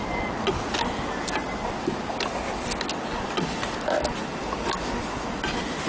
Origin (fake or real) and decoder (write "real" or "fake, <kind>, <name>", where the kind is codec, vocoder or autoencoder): real